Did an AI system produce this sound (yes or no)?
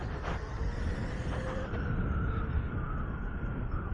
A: no